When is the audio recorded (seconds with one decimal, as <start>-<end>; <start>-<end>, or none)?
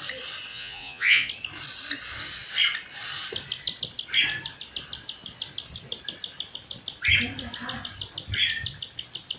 0.0-0.5; 1.3-9.4